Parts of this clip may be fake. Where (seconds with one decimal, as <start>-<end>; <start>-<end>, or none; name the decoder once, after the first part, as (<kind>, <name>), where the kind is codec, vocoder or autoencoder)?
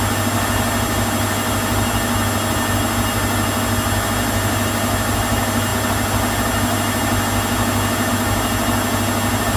none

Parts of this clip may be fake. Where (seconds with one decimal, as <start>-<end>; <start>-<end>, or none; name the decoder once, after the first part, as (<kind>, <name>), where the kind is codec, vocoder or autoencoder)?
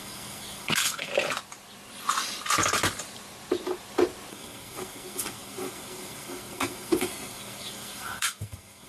0.0-1.1 (codec, SNAC); 4.3-8.9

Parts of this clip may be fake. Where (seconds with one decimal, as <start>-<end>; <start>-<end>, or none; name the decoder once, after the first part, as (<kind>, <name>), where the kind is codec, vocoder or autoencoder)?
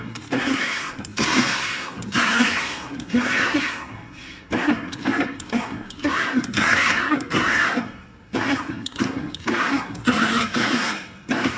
0.0-11.6 (codec, SNAC)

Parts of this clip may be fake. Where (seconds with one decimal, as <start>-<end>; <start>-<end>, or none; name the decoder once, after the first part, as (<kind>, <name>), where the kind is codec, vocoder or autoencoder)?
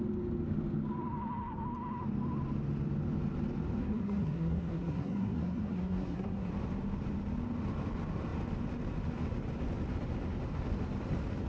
3.8-6.5 (codec, SNAC)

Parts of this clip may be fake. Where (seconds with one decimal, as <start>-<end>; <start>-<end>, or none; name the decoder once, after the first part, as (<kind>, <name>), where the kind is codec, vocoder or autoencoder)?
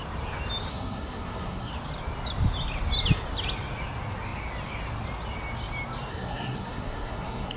0.7-1.7 (codec, SNAC); 6.1-7.6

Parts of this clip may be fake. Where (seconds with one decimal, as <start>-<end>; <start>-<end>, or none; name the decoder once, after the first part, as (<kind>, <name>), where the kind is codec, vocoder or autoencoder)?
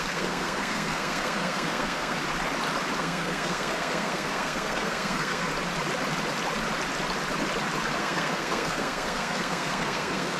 0.0-2.2 (codec, SNAC); 3.0-5.5; 8.0-10.4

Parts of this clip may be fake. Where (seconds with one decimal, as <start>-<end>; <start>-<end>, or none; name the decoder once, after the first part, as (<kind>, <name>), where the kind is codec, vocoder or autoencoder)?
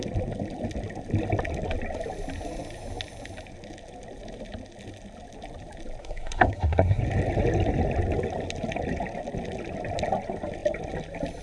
6.0-7.0 (codec, SNAC)